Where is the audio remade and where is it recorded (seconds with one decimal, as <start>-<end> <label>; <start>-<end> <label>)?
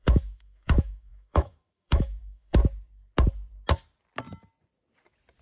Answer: 0.0-2.6 remade; 2.6-5.4 recorded